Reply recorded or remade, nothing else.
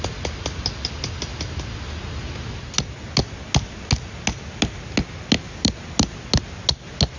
recorded